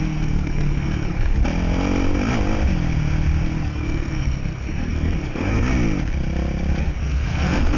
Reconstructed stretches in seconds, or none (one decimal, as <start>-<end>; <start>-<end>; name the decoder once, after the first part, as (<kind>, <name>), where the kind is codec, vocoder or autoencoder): 0.0-1.4 (codec, SNAC); 3.6-5.6; 6.8-7.8

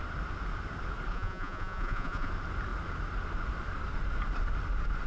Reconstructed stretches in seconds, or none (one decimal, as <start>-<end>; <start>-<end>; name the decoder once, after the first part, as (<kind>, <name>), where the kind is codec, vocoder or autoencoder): 1.1-2.3 (vocoder, Vocos)

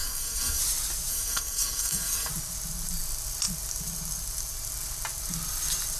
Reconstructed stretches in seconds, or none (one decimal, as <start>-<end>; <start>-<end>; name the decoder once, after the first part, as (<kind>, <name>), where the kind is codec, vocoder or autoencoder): 0.0-0.6 (codec, SNAC); 1.1-2.3